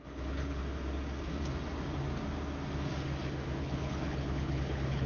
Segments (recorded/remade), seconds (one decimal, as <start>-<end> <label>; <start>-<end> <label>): 0.0-0.6 remade; 0.6-3.6 recorded; 3.6-5.1 remade